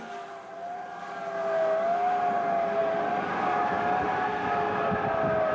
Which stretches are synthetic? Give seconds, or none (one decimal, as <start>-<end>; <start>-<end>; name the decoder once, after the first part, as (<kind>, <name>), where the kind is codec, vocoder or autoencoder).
none